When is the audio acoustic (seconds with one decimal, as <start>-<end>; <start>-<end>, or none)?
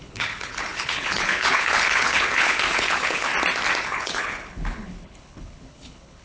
3.3-3.8